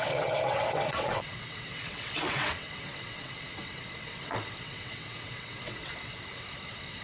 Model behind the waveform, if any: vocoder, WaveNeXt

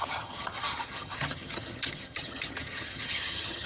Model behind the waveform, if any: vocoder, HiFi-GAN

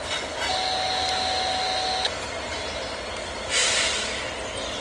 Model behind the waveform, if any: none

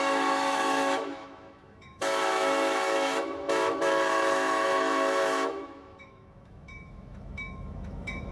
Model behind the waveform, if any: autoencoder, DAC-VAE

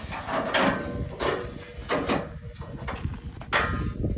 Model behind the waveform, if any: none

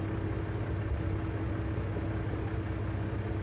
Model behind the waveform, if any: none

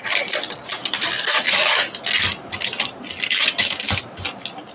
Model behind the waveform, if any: none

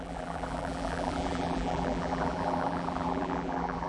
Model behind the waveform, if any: vocoder, BigVGAN v2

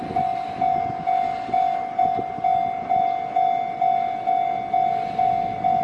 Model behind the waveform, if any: none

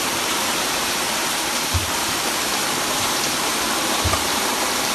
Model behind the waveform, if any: vocoder, BigVGAN v2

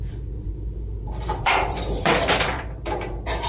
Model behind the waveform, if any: vocoder, BigVGAN v2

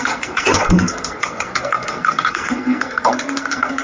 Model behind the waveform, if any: codec, SNAC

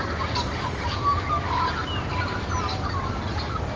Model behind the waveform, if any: none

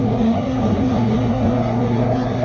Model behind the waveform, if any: codec, SNAC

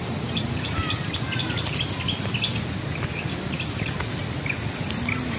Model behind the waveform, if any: none